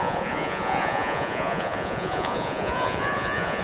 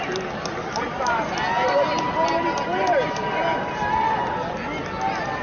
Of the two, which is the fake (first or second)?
first